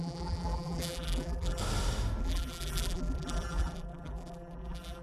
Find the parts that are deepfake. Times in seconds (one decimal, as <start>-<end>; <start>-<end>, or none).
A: 0.0-1.6; 2.2-5.0